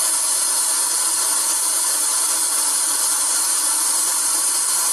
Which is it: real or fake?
real